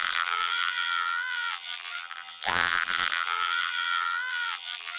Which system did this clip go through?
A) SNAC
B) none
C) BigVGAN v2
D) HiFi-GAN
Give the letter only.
C